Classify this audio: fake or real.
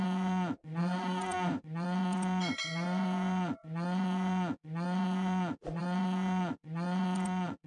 fake